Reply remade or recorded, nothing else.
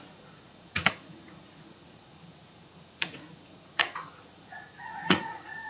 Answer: remade